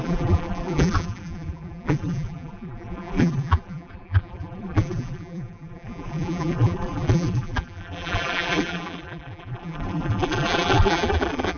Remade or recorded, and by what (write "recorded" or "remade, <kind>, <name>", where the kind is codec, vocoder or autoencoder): remade, vocoder, BigVGAN v2